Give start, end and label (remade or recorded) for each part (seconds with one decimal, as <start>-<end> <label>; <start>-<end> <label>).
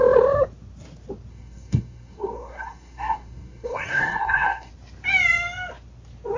0.0-1.3 recorded; 1.3-4.7 remade; 4.7-6.4 recorded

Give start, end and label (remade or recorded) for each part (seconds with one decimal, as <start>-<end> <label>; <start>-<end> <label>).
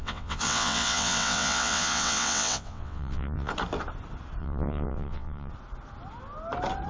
0.0-3.5 remade; 3.5-4.4 recorded; 4.4-5.5 remade; 5.5-6.9 recorded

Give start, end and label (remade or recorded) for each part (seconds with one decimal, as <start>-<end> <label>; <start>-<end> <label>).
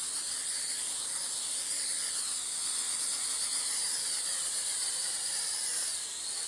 0.0-3.1 recorded; 3.1-5.3 remade; 5.3-6.5 recorded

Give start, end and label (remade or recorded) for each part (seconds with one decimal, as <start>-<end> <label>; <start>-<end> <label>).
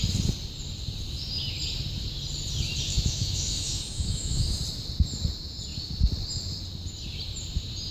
0.0-2.9 recorded; 2.9-4.6 remade; 4.6-7.9 recorded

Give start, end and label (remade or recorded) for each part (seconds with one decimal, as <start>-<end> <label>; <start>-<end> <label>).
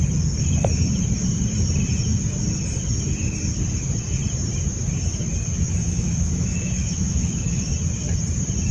0.0-5.8 recorded; 5.8-7.7 remade; 7.7-8.7 recorded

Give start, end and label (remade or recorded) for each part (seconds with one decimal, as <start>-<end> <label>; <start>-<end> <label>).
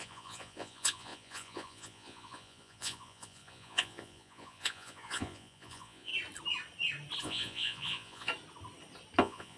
0.0-6.1 remade; 6.1-7.2 recorded; 7.2-8.3 remade; 8.3-9.2 recorded; 9.2-9.6 remade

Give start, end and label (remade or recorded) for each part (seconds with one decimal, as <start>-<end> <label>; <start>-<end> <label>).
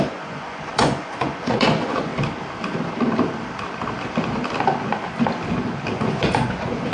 0.0-2.1 remade; 2.1-5.9 recorded; 5.9-6.9 remade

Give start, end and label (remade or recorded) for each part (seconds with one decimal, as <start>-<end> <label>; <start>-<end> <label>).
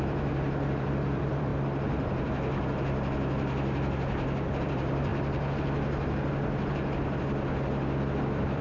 0.0-1.5 remade; 1.5-4.6 recorded; 4.6-5.1 remade; 5.1-8.2 recorded; 8.2-8.6 remade